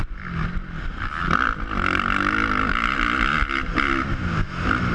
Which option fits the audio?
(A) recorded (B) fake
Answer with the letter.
A